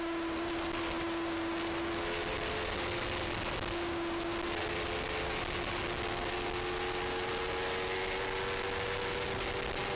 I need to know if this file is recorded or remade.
recorded